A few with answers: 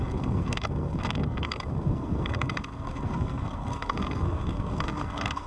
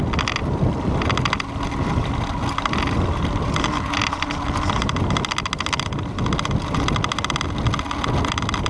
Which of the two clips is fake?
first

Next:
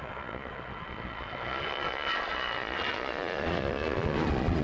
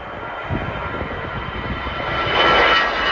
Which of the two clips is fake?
first